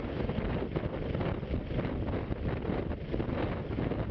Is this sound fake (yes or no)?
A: no